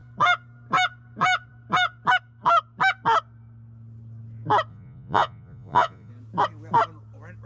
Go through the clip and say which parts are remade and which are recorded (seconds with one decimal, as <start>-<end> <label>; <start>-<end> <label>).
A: 0.0-4.7 recorded; 4.7-6.1 remade; 6.1-7.5 recorded